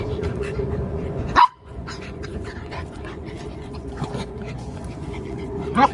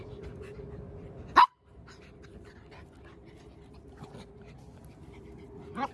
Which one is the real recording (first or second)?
second